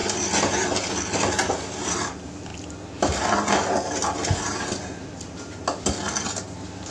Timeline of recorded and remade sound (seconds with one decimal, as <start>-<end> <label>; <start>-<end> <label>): 0.0-0.9 remade; 0.9-6.9 recorded